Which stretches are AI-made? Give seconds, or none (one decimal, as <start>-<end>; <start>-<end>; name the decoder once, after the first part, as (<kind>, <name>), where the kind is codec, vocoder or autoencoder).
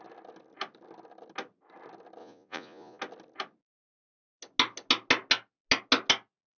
2.2-3.0 (vocoder, Vocos)